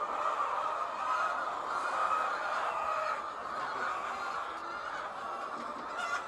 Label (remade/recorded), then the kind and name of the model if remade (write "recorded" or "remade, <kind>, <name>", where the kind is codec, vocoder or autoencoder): recorded